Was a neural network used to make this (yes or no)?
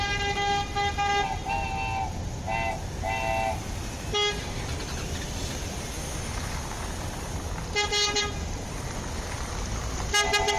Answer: no